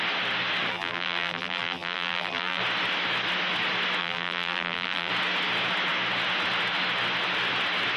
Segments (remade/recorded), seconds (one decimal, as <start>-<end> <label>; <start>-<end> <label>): 0.0-0.7 recorded; 0.7-2.6 remade; 2.6-4.0 recorded; 4.0-5.1 remade; 5.1-8.0 recorded